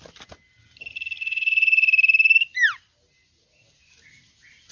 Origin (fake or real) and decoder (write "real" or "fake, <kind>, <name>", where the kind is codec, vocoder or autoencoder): real